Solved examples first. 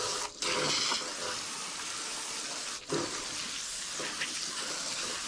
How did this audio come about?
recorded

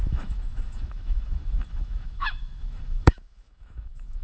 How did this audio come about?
remade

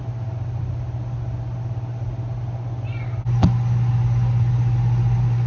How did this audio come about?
recorded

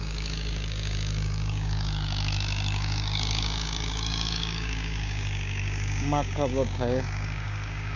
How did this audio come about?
remade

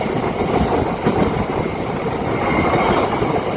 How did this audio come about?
recorded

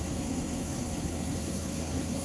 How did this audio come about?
remade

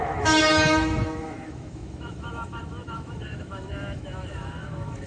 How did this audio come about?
remade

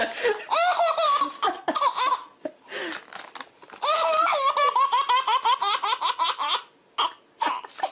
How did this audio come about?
recorded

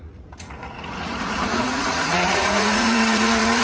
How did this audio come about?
remade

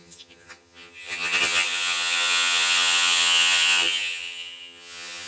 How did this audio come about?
remade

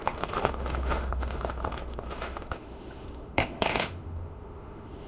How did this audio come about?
remade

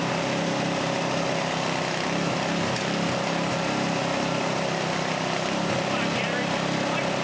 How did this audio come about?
recorded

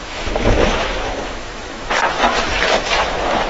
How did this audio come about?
remade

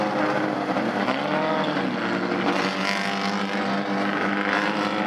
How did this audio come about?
recorded